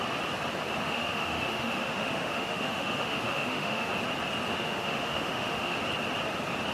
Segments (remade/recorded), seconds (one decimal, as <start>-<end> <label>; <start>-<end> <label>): 0.0-0.8 recorded; 0.8-3.9 remade; 3.9-4.5 recorded; 4.5-5.8 remade; 5.8-6.7 recorded